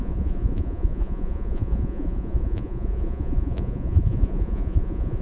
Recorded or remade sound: remade